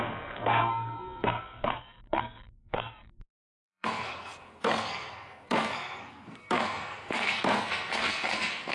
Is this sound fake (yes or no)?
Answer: yes